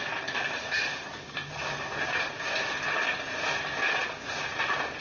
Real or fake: real